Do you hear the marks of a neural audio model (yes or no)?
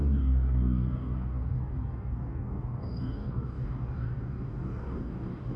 yes